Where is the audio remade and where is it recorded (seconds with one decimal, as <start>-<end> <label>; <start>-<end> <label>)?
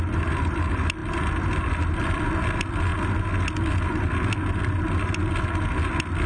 0.0-6.3 recorded